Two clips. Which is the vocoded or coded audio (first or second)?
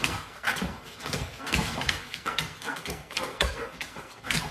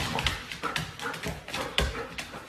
first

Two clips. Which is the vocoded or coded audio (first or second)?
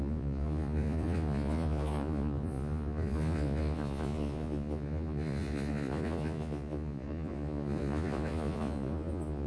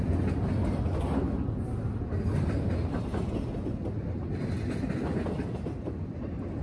first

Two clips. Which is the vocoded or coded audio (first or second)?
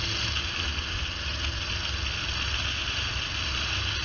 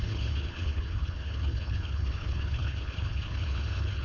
second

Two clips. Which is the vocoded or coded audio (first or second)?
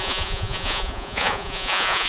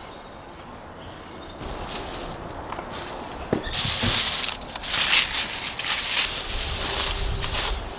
first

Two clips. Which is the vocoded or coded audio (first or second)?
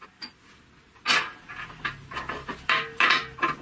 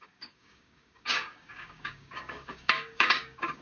second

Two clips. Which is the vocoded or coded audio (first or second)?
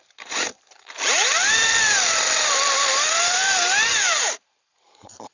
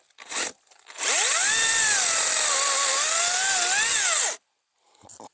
first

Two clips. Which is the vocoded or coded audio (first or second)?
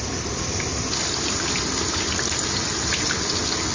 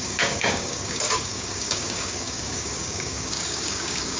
second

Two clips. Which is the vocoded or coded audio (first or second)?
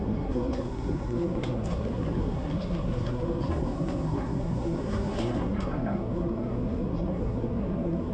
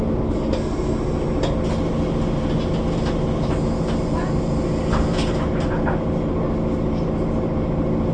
first